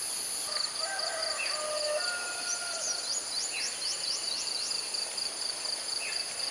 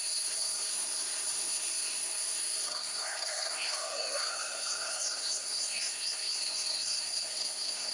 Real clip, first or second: first